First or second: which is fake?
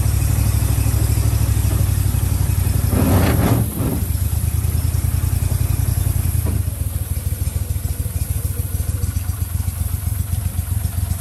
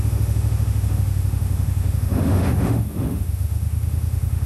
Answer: second